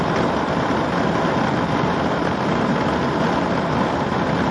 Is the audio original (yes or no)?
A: yes